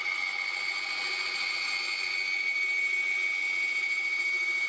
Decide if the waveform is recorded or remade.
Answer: recorded